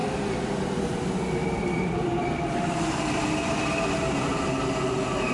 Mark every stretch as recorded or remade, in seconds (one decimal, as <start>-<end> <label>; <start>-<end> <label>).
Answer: 0.0-4.3 remade; 4.3-5.3 recorded